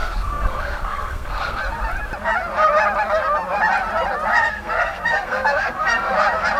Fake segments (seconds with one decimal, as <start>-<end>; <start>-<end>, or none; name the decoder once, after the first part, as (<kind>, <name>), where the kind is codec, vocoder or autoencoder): 0.0-1.6 (codec, SNAC); 4.3-6.1